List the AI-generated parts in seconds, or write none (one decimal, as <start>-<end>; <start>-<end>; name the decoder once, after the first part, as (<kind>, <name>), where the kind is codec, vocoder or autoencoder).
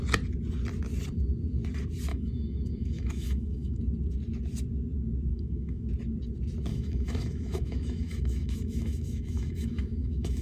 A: 2.1-3.8 (autoencoder, DAC-VAE); 5.3-5.9; 6.7-10.4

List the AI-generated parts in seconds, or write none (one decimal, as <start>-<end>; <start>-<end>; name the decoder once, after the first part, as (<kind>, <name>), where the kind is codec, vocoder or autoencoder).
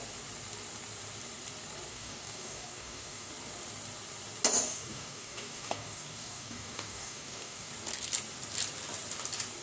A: 1.9-3.3 (codec, DAC); 4.7-7.7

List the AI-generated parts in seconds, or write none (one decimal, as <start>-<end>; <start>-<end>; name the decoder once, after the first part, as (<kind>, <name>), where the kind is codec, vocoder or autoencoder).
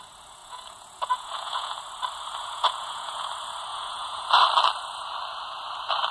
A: 0.4-1.8 (vocoder, Vocos); 2.4-3.3; 3.7-4.3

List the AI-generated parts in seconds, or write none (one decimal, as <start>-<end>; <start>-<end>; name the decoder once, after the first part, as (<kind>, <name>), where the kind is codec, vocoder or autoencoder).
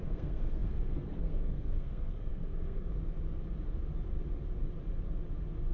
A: 0.0-2.9 (codec, SNAC)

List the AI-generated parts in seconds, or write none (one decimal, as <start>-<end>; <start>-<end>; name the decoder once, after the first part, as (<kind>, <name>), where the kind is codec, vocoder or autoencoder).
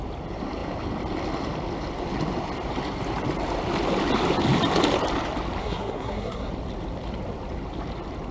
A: 5.6-6.5 (codec, SNAC)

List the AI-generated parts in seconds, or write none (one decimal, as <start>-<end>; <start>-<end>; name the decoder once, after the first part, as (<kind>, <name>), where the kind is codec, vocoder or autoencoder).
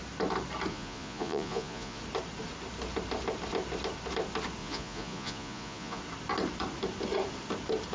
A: 0.7-2.0 (vocoder, Vocos); 4.6-6.0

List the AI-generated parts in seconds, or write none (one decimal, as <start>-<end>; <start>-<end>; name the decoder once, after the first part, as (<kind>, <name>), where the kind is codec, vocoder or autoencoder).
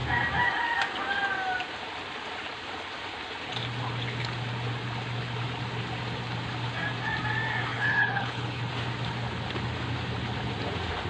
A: 7.7-8.7 (codec, HILCodec)